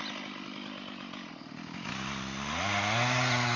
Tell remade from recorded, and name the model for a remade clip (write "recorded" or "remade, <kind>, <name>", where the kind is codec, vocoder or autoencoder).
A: recorded